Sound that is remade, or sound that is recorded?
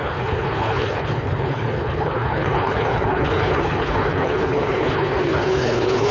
remade